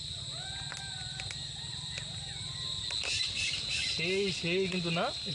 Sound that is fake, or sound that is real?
real